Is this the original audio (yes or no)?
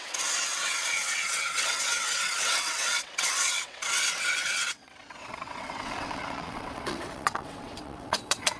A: no